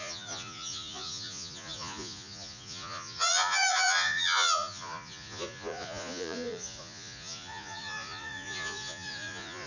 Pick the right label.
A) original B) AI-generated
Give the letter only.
B